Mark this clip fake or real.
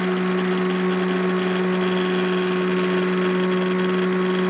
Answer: real